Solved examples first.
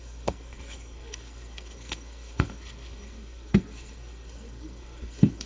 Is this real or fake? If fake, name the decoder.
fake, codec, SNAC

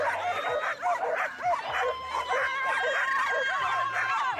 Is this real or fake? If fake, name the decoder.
real